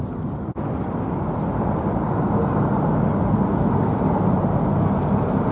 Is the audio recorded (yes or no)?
yes